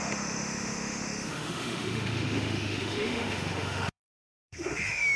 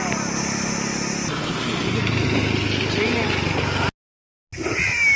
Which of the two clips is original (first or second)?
second